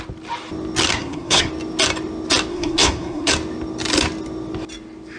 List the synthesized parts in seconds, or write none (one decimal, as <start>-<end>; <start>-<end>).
0.9-1.5; 2.5-3.3